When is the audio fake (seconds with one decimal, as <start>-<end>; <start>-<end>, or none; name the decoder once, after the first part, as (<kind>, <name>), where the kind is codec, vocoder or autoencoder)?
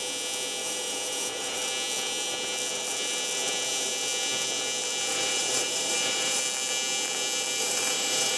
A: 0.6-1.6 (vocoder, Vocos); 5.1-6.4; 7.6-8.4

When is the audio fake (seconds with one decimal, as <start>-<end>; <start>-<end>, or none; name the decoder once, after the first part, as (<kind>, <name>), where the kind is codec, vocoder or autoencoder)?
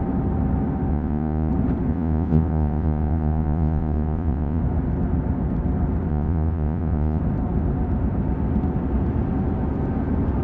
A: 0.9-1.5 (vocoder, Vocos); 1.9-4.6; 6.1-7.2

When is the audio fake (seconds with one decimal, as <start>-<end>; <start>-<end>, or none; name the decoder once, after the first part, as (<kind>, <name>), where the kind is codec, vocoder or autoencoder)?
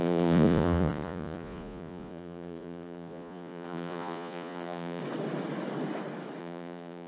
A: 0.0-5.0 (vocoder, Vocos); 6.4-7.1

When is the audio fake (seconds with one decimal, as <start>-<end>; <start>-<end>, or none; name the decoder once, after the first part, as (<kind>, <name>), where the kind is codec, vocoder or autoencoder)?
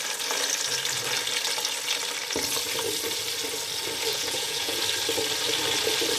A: 4.1-4.8 (vocoder, Vocos)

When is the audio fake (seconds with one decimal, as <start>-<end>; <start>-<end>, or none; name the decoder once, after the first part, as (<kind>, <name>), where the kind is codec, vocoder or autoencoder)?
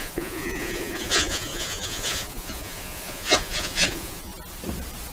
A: 0.0-4.3 (vocoder, Vocos)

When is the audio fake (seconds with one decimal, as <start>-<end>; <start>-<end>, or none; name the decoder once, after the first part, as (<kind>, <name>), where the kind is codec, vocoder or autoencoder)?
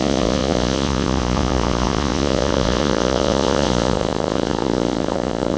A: 0.0-5.6 (vocoder, Vocos)